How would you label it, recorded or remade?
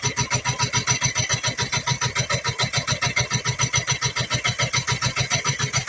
recorded